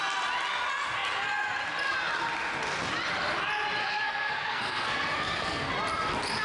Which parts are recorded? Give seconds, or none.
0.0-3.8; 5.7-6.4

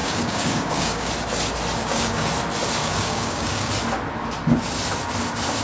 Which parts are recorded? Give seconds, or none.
1.1-1.8; 2.3-2.8; 3.7-5.6

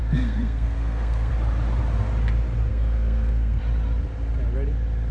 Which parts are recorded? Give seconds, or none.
1.3-2.7; 3.6-5.1